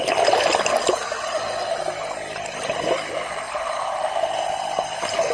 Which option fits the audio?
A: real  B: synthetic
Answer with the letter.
A